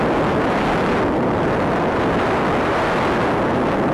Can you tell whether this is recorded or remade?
recorded